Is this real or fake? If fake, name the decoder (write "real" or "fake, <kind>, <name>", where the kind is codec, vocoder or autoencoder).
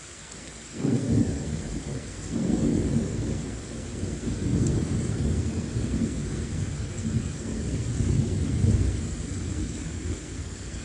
fake, codec, SNAC